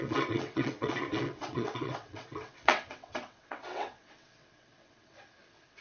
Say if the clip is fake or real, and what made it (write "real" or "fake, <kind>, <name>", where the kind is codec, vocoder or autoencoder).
fake, vocoder, WaveNeXt